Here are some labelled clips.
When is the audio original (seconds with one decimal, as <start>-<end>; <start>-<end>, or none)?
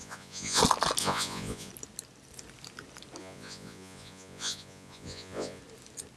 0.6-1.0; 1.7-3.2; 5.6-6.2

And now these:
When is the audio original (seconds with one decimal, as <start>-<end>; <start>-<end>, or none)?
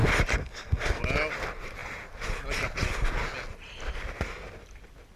0.0-0.4; 1.0-5.2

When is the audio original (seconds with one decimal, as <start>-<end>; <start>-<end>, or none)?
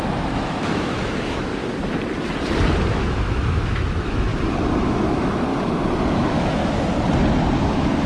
1.5-2.9; 4.3-4.8; 5.5-6.1; 6.6-7.6